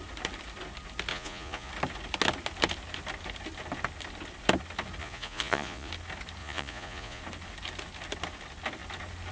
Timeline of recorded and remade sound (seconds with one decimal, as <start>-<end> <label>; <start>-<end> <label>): 0.0-1.1 recorded; 1.1-1.7 remade; 1.7-5.0 recorded; 5.0-5.9 remade; 5.9-6.4 recorded; 6.4-7.2 remade; 7.2-9.3 recorded